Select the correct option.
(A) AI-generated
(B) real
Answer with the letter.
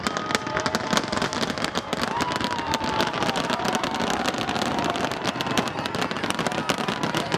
B